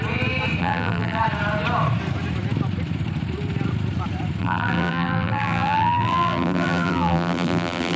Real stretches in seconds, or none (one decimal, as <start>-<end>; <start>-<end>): 0.0-0.6; 1.2-4.4